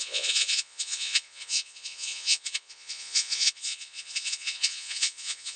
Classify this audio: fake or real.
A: fake